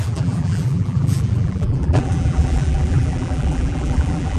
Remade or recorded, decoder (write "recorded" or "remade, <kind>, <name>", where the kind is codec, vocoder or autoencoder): remade, vocoder, BigVGAN v2